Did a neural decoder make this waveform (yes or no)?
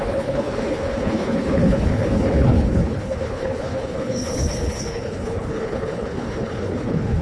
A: yes